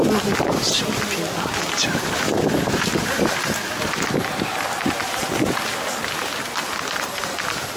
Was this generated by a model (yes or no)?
no